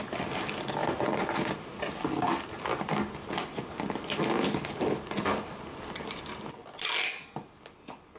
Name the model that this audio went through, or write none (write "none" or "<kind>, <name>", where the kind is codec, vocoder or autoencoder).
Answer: none